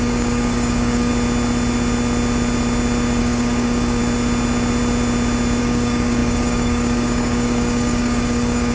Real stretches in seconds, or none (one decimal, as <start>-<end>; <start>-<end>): 1.1-3.2; 4.0-5.6